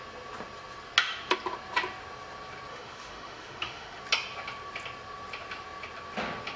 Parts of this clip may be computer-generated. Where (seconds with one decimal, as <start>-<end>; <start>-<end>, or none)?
2.7-4.0

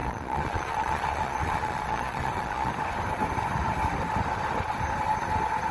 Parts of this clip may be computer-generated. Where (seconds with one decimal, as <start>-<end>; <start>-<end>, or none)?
0.0-2.7

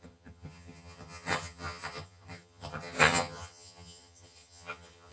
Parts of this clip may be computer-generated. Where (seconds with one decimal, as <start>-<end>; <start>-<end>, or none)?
0.0-5.1

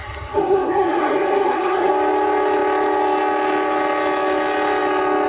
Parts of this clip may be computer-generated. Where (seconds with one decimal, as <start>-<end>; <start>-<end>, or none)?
0.0-1.9

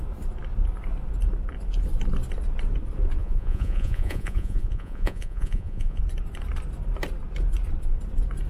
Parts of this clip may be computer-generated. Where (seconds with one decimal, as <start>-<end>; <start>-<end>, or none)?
3.2-6.0

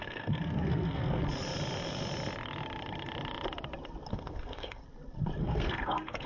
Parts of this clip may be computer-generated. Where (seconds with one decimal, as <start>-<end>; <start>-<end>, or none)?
0.0-1.2; 4.1-4.8; 5.4-6.3